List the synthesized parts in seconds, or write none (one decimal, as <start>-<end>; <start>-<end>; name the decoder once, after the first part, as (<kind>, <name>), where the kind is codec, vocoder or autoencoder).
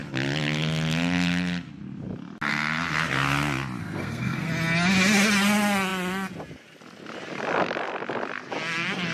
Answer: 3.8-4.5 (codec, SNAC)